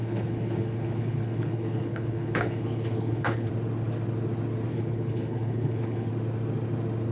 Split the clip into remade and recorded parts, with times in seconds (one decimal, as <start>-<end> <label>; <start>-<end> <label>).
0.0-3.5 remade; 3.5-4.7 recorded; 4.7-6.1 remade; 6.1-7.1 recorded